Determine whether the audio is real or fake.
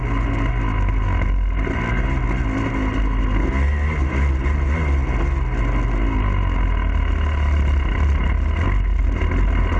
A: real